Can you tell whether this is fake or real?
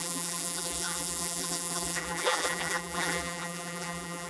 fake